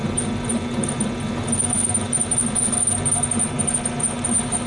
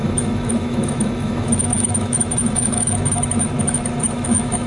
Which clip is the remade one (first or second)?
second